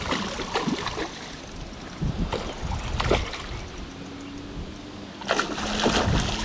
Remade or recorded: recorded